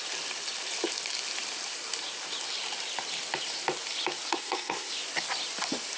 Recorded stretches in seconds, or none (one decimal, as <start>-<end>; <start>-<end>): 0.0-4.3; 4.9-6.0